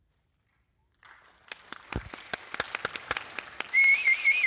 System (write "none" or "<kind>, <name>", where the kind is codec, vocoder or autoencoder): none